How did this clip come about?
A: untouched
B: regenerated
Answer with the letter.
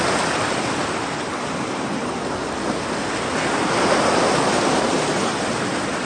A